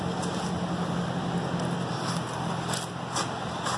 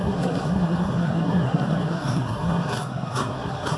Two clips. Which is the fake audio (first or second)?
second